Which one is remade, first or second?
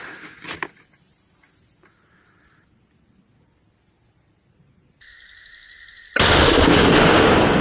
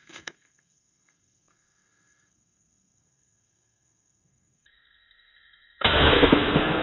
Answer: second